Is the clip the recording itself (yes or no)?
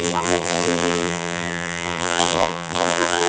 no